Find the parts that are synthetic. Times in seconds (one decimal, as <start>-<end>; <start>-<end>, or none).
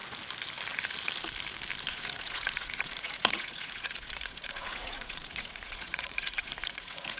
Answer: 1.9-7.2